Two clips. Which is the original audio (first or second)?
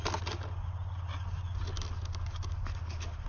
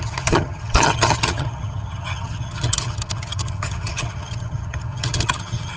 first